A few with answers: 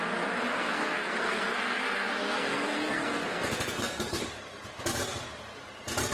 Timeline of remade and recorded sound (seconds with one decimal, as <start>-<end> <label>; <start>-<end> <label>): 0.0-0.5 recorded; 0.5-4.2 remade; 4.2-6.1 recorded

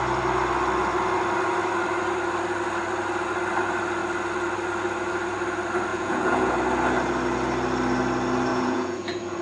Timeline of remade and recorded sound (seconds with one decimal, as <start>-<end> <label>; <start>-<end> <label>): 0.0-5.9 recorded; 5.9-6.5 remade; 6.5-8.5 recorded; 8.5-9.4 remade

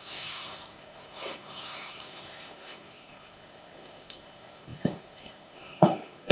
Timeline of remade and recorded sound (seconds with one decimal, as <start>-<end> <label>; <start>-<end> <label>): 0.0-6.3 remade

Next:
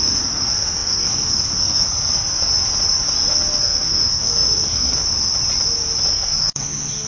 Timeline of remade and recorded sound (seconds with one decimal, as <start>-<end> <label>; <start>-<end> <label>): 0.0-2.5 remade; 2.5-3.6 recorded; 3.6-5.0 remade; 5.0-6.1 recorded; 6.1-7.1 remade

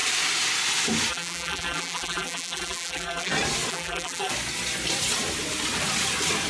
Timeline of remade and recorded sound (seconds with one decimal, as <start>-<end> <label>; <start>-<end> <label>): 0.0-1.1 recorded; 1.1-3.3 remade; 3.3-3.7 recorded; 3.7-4.3 remade; 4.3-6.5 recorded